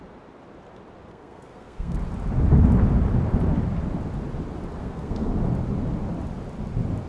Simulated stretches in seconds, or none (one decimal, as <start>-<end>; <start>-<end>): 1.1-2.0; 4.8-5.3